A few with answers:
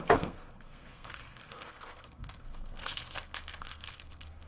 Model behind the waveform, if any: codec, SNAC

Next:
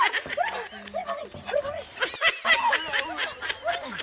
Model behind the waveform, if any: none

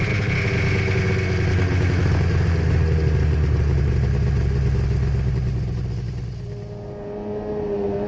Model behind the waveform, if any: none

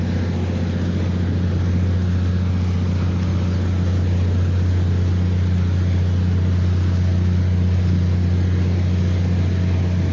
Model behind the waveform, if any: none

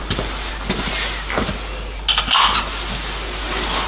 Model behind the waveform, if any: none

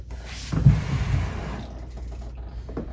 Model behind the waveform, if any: none